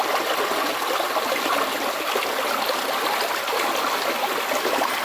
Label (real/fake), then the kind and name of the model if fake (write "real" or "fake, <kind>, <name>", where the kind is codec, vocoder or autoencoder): real